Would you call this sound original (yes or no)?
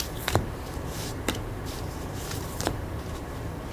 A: no